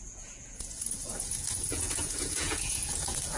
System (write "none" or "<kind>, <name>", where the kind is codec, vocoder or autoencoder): vocoder, Vocos